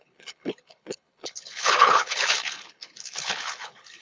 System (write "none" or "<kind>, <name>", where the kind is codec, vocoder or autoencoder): codec, HILCodec